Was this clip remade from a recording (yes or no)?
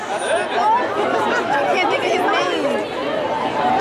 no